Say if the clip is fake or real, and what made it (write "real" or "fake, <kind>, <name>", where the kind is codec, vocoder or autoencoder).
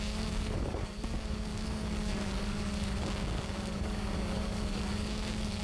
fake, codec, DAC